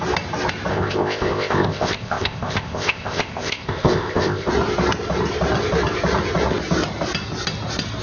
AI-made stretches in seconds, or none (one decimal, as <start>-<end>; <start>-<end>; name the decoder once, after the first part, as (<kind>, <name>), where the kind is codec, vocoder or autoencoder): 0.7-4.5 (codec, ZipCodec)